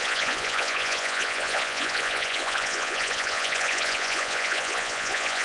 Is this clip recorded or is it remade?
remade